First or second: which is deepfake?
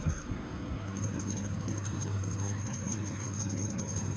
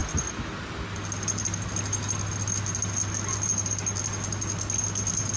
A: first